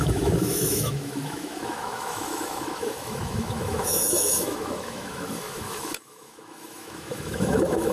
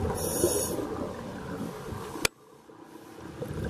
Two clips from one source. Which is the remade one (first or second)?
first